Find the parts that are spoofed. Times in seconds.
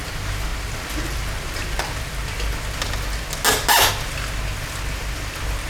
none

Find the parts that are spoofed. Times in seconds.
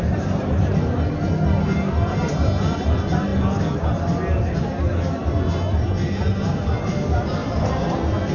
none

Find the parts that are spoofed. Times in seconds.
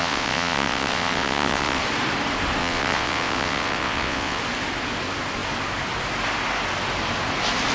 0.0-1.8 (vocoder, WaveNeXt); 2.6-4.4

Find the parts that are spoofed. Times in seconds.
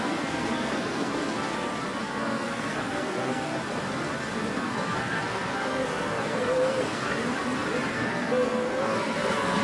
0.0-1.5 (codec, SNAC); 2.0-3.5; 4.5-7.2; 7.9-9.6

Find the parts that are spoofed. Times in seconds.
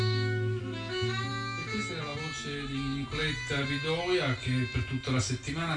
0.0-0.6 (codec, DAC)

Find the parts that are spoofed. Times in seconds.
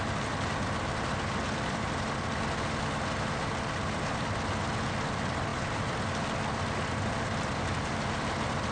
none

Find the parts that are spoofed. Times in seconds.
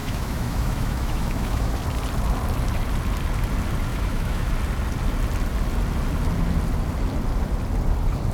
0.0-1.7 (autoencoder, DAC-VAE); 3.9-4.5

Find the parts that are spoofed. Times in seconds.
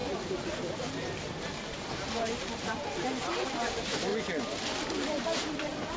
0.8-4.1 (vocoder, BigVGAN v2); 4.8-6.0